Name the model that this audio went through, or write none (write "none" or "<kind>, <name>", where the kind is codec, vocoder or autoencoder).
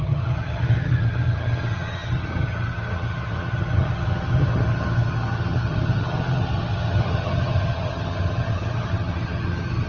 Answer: vocoder, HiFi-GAN